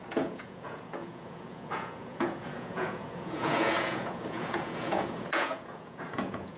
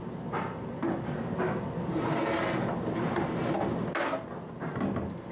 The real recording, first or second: second